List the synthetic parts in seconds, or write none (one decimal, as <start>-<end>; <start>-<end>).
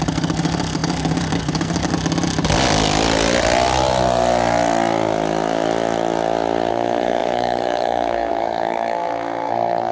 0.0-1.9; 6.7-9.9